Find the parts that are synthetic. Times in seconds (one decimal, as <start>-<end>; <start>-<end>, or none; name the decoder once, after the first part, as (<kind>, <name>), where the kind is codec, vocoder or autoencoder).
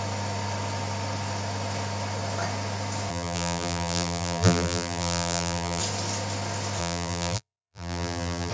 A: 3.1-5.8 (vocoder, BigVGAN v2); 6.8-8.5